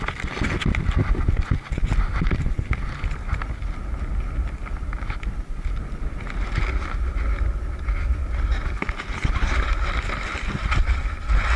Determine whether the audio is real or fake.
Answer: real